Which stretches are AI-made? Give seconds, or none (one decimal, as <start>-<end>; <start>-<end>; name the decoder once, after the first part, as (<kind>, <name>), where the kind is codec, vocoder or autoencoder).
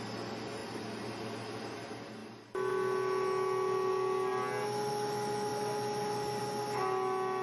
none